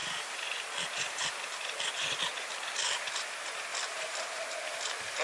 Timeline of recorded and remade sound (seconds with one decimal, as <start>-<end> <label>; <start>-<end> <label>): 0.0-3.7 recorded; 3.7-4.8 remade; 4.8-5.2 recorded